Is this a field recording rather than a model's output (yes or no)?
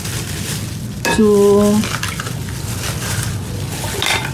yes